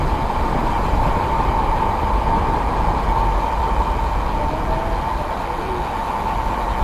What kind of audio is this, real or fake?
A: real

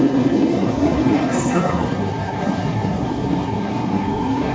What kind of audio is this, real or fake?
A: fake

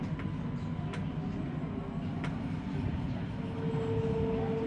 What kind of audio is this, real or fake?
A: real